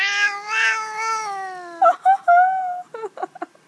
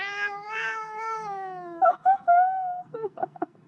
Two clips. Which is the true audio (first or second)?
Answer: first